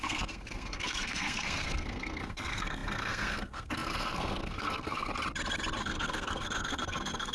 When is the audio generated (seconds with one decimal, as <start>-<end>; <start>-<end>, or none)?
0.0-5.1; 5.8-7.3